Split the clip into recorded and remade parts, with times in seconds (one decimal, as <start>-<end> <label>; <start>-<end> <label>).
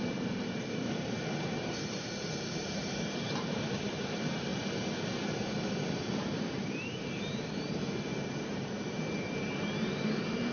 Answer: 0.0-4.5 remade; 4.5-6.2 recorded; 6.2-10.5 remade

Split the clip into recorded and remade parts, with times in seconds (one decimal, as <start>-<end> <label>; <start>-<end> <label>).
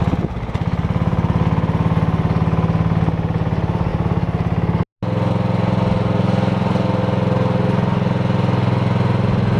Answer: 0.0-9.6 recorded